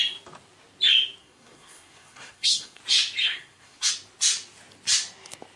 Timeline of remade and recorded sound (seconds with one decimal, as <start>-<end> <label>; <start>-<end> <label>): 0.0-1.2 recorded; 1.2-2.8 remade; 2.8-3.2 recorded; 3.2-3.9 remade; 3.9-5.6 recorded